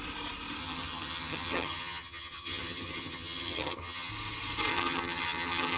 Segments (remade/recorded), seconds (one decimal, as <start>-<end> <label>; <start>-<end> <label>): 0.0-0.6 recorded; 0.6-4.1 remade; 4.1-4.7 recorded; 4.7-5.8 remade